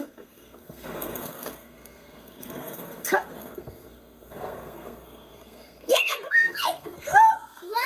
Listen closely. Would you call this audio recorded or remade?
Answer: remade